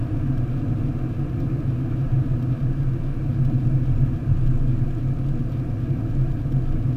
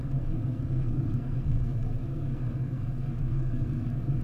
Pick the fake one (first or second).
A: second